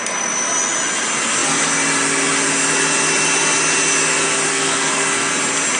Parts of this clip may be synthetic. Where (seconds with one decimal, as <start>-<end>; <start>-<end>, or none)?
4.5-5.3